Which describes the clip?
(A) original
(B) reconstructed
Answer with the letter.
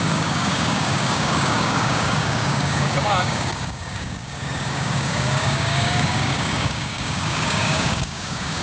B